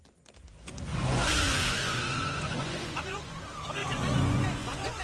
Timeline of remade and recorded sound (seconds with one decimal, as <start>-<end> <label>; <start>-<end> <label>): 0.0-0.9 recorded; 0.9-3.4 remade; 3.4-3.8 recorded; 3.8-5.0 remade